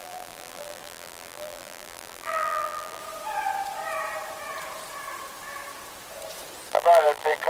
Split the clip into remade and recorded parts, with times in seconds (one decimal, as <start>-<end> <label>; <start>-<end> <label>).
0.0-3.0 remade; 3.0-6.7 recorded; 6.7-7.5 remade